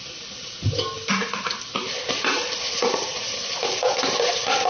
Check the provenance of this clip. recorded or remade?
recorded